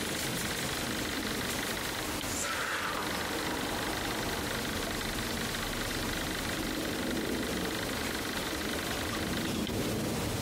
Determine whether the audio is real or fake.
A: real